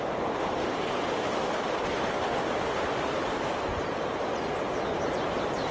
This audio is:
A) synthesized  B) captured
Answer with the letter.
B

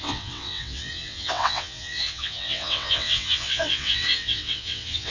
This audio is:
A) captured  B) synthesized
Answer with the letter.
B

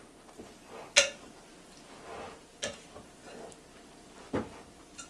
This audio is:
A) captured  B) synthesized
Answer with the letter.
A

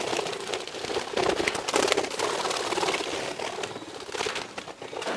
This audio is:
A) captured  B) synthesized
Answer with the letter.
A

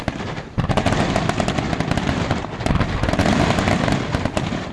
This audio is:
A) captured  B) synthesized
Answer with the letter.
A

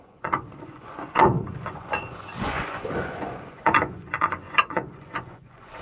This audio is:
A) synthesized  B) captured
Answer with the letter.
A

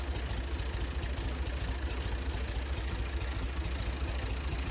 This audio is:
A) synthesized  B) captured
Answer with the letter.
B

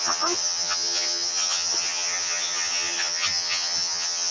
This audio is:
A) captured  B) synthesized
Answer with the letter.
B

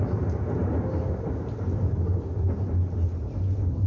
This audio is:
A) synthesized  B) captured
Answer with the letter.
B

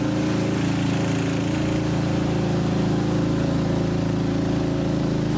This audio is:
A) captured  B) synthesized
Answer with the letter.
A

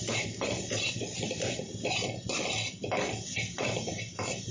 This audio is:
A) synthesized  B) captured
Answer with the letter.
A